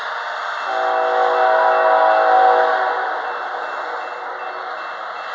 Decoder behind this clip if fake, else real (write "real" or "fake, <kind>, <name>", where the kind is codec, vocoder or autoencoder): real